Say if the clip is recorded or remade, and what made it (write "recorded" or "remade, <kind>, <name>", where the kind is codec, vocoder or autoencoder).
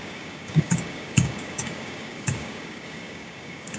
remade, codec, DAC